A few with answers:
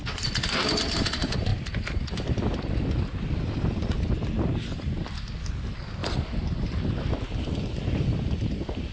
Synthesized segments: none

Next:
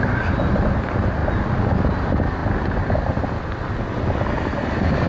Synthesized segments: none

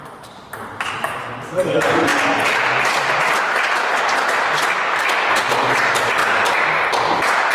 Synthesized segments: 0.0-2.1 (vocoder, BigVGAN v2); 5.3-6.2

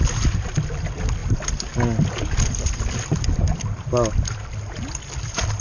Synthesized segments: none

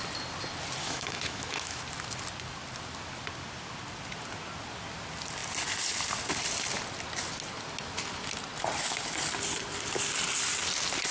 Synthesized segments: 0.8-1.8 (autoencoder, DAC-VAE)